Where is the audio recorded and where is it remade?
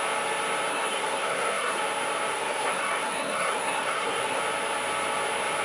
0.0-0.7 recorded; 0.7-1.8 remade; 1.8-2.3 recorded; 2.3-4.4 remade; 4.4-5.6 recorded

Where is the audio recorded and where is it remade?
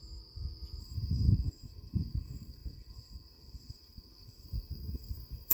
0.0-0.8 recorded; 0.8-5.5 remade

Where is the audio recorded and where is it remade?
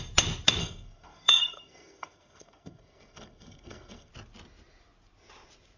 0.0-0.6 recorded; 0.6-4.1 remade; 4.1-5.8 recorded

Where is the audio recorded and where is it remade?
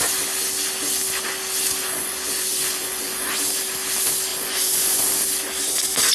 0.0-1.8 recorded; 1.8-3.3 remade; 3.3-4.3 recorded; 4.3-5.0 remade; 5.0-6.1 recorded